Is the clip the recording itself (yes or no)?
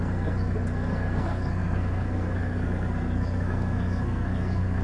no